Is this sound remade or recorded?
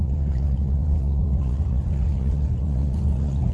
remade